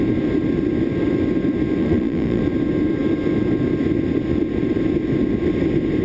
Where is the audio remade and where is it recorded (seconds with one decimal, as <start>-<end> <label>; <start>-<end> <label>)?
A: 0.0-1.8 recorded; 1.8-2.4 remade; 2.4-6.0 recorded